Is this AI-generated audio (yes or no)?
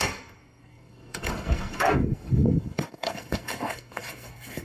yes